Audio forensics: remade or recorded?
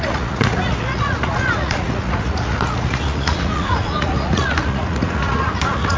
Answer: remade